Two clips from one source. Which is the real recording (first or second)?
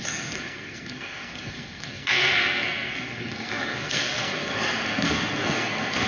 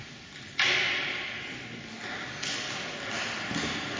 second